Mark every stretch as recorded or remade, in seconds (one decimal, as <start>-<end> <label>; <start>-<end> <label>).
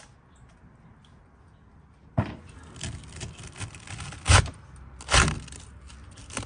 0.0-6.5 recorded